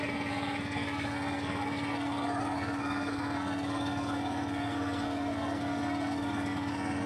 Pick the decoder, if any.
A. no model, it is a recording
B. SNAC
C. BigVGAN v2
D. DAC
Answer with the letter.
B